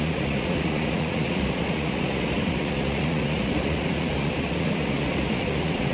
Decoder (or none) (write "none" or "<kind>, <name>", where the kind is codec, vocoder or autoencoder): vocoder, Vocos